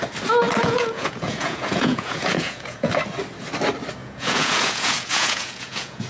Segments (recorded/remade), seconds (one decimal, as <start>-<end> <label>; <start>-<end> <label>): 0.0-0.6 recorded; 0.6-2.9 remade; 2.9-4.0 recorded; 4.0-6.1 remade